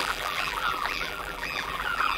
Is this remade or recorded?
remade